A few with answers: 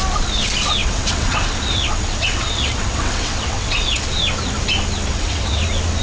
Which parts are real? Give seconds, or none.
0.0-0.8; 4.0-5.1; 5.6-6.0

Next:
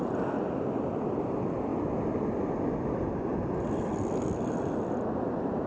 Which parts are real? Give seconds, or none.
0.0-5.7

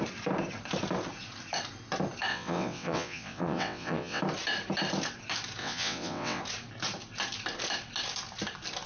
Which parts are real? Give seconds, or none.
0.0-2.3; 4.2-5.6; 6.4-8.9

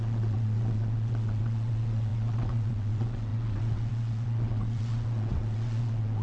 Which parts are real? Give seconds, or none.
none

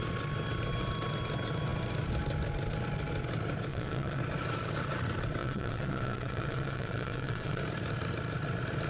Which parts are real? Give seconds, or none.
0.0-3.7; 4.2-5.4; 7.6-8.9

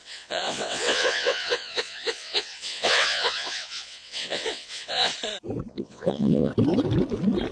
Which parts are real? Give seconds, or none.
5.1-5.7; 6.5-7.5

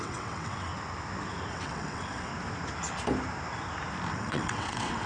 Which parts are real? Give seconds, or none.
0.7-1.5; 2.3-4.1